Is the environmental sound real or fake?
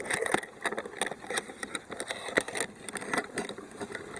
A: real